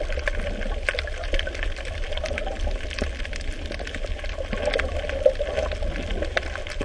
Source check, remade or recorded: recorded